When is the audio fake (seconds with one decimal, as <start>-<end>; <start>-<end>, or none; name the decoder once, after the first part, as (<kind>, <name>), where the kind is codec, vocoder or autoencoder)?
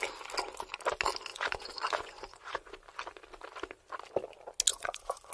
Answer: 1.3-2.7 (vocoder, Vocos); 4.7-5.3